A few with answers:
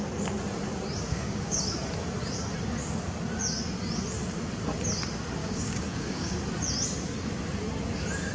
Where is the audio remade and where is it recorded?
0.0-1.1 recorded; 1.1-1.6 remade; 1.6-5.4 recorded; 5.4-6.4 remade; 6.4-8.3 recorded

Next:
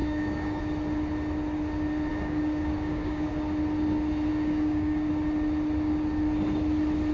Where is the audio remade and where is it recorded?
0.0-0.6 remade; 0.6-2.1 recorded; 2.1-3.3 remade; 3.3-4.3 recorded; 4.3-5.1 remade; 5.1-7.1 recorded

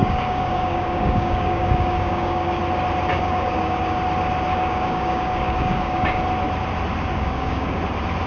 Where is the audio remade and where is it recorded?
0.0-2.6 remade; 2.6-3.1 recorded; 3.1-4.0 remade; 4.0-4.5 recorded; 4.5-6.2 remade; 6.2-7.1 recorded; 7.1-7.8 remade; 7.8-8.3 recorded

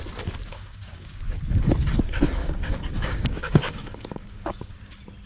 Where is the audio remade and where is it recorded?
0.0-0.5 recorded; 0.5-1.2 remade; 1.2-2.4 recorded; 2.4-4.7 remade; 4.7-5.3 recorded